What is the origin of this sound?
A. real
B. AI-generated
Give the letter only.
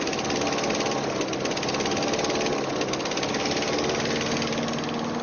A